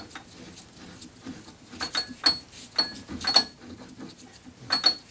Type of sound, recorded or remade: recorded